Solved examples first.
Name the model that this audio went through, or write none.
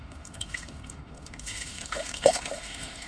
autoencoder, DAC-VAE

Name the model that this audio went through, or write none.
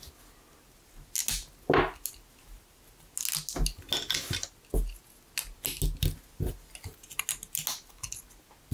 none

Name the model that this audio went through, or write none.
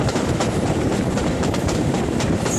vocoder, BigVGAN v2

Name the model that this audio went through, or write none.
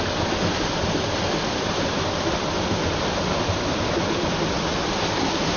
none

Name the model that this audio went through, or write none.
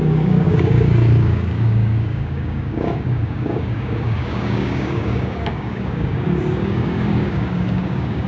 codec, DAC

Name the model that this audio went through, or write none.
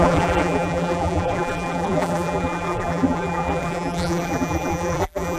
vocoder, BigVGAN v2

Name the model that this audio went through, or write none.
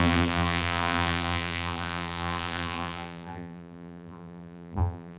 vocoder, BigVGAN v2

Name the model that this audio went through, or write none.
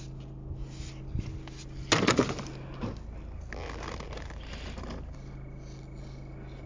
none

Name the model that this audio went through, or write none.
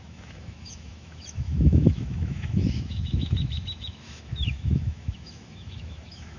autoencoder, DAC-VAE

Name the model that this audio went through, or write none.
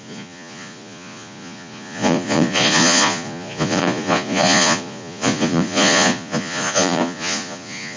vocoder, Vocos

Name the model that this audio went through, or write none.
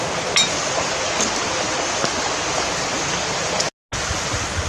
none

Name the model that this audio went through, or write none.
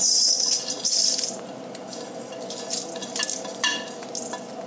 none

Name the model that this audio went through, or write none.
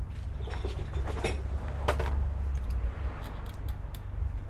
none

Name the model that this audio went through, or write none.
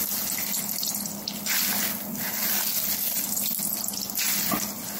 none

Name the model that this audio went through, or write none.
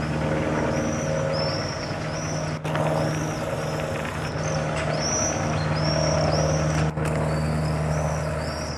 none